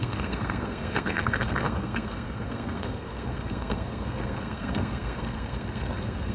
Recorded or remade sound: remade